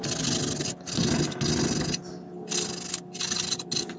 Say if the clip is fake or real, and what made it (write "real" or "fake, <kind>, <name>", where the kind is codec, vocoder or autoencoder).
real